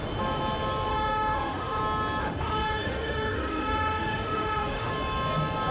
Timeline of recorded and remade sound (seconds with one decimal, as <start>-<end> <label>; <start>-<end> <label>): 0.0-0.9 recorded; 0.9-1.8 remade; 1.8-2.2 recorded; 2.2-4.9 remade; 4.9-5.7 recorded